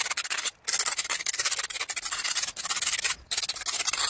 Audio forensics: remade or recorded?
recorded